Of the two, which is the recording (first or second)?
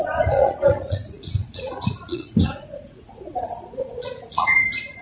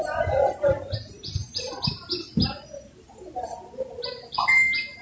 second